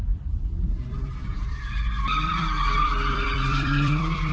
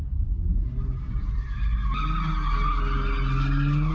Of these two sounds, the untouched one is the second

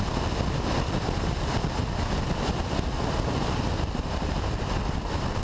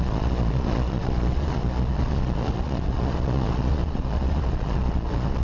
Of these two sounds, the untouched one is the first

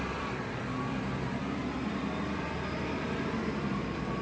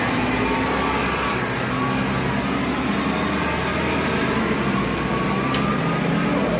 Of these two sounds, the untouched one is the second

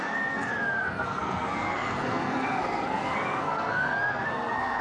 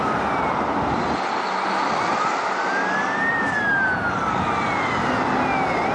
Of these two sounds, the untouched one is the second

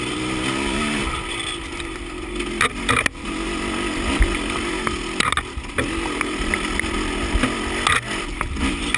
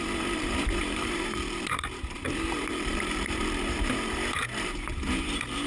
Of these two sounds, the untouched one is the first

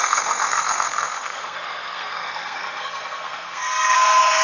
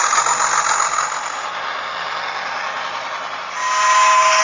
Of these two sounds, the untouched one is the second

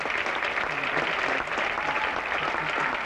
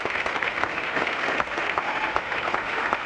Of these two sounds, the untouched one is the first